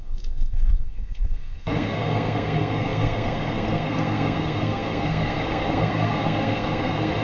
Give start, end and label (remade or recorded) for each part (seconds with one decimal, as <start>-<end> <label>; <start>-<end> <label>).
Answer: 0.0-7.2 remade